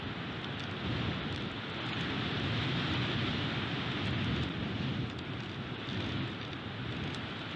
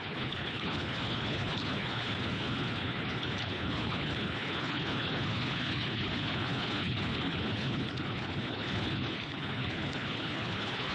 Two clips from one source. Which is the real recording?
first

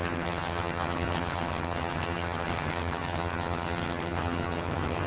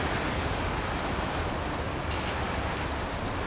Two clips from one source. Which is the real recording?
second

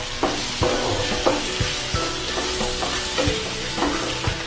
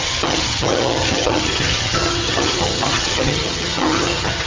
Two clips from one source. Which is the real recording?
first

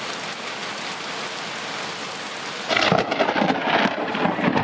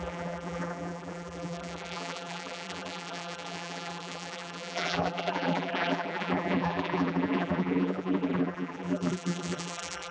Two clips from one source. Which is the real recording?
first